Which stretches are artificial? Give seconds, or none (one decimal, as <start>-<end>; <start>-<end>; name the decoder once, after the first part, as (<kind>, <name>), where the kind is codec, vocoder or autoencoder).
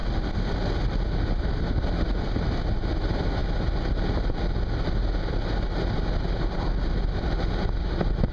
none